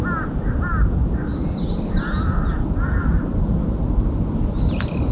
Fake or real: real